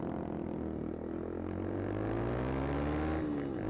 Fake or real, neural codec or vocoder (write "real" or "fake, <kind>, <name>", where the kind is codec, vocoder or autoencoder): real